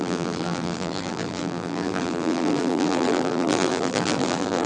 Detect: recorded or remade remade